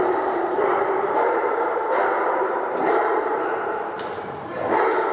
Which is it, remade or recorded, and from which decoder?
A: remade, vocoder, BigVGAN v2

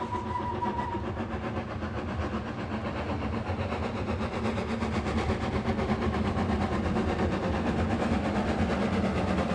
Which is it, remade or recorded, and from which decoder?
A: recorded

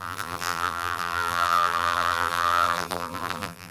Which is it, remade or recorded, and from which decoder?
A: remade, vocoder, BigVGAN v2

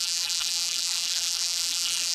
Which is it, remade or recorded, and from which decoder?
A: remade, vocoder, BigVGAN v2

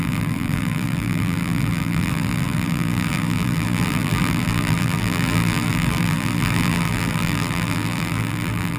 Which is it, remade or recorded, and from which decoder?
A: remade, vocoder, BigVGAN v2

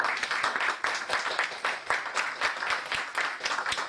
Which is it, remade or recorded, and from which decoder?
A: recorded